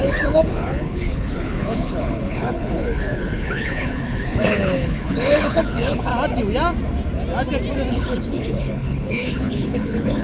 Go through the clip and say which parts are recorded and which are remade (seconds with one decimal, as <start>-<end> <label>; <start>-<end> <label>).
0.0-6.1 remade; 6.1-7.9 recorded; 7.9-10.2 remade